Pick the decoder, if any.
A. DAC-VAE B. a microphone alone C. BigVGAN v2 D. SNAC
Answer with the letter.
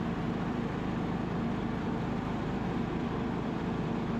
C